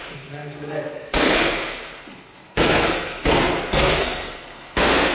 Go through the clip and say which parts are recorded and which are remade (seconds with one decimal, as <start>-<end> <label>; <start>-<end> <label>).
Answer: 0.0-5.1 remade